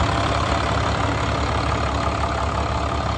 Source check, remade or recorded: recorded